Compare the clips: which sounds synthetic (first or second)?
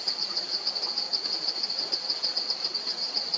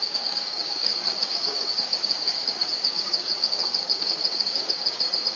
second